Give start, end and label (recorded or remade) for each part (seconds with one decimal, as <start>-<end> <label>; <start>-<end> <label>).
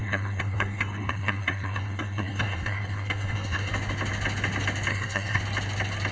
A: 0.0-3.7 remade; 3.7-4.9 recorded; 4.9-5.4 remade; 5.4-6.1 recorded